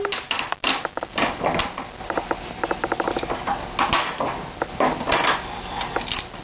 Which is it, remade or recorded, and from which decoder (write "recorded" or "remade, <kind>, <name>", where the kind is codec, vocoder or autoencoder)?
recorded